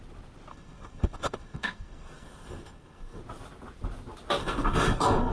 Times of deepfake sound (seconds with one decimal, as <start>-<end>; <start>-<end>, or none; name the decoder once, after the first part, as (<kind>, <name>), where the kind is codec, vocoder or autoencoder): 0.5-3.2 (codec, SNAC); 4.4-5.3